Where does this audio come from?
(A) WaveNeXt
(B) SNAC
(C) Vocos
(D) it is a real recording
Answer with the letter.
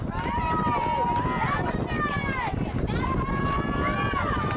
D